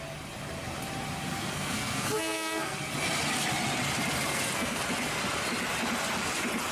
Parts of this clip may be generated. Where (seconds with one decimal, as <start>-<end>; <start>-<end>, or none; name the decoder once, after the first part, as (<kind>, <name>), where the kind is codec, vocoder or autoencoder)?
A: 1.3-2.8 (codec, SNAC); 4.3-4.8